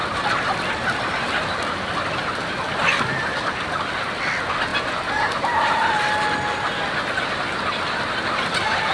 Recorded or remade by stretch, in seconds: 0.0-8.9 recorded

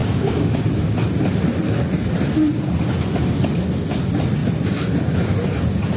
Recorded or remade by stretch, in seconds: 0.0-0.6 remade; 0.6-6.0 recorded

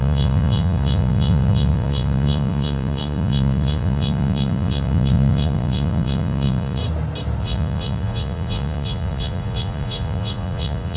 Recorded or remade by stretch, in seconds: 0.0-6.8 remade; 6.8-7.4 recorded; 7.4-11.0 remade

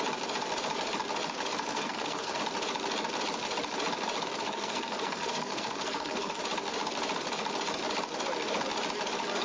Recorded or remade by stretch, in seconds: 0.0-1.7 recorded; 1.7-2.4 remade; 2.4-4.3 recorded; 4.3-6.4 remade; 6.4-9.4 recorded

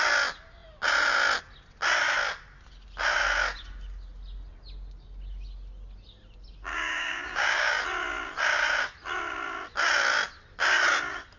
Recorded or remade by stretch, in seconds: 0.0-6.7 recorded; 6.7-7.8 remade; 7.8-11.4 recorded

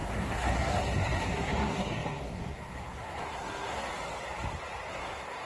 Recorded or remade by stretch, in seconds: 0.0-3.9 remade; 3.9-4.9 recorded; 4.9-5.5 remade